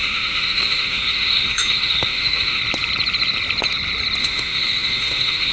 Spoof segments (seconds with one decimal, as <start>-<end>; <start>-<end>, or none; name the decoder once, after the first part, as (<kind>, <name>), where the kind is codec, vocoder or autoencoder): 0.0-2.6 (autoencoder, DAC-VAE); 4.2-5.5